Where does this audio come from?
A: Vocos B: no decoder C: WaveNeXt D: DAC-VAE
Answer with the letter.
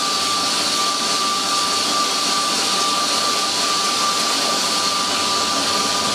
B